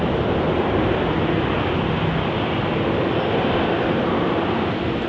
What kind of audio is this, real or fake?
real